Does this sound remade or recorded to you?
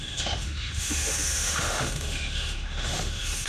remade